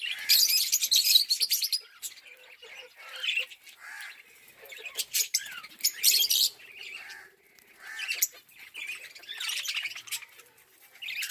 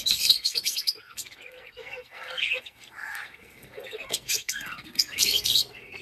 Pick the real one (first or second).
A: first